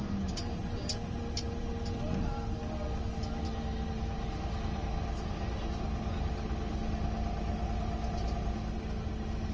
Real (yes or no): yes